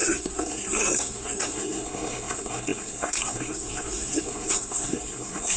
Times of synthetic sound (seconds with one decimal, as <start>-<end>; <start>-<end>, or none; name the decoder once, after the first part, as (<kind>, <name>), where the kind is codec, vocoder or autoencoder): 0.0-5.6 (codec, SNAC)

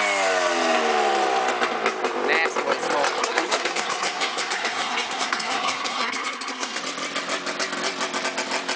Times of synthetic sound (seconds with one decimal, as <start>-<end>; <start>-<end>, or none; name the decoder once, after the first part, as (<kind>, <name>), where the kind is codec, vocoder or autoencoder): 3.2-6.8 (codec, SNAC)

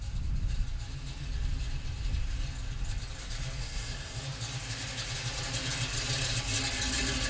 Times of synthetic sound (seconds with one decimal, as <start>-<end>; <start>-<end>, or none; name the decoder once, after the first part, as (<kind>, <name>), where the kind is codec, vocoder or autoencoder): 3.6-4.2 (codec, SNAC)